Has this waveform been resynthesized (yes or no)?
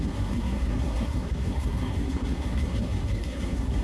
yes